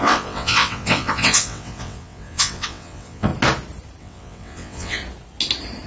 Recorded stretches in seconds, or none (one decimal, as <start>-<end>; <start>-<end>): 3.3-4.0; 5.0-5.9